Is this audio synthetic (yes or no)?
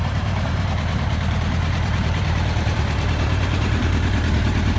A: yes